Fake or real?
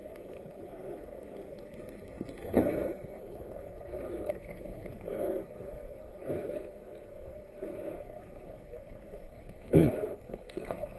fake